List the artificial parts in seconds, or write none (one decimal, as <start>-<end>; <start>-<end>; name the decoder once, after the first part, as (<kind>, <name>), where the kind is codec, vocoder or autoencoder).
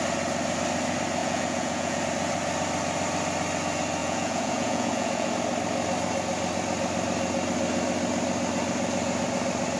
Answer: 1.2-2.0 (vocoder, Vocos); 4.0-5.3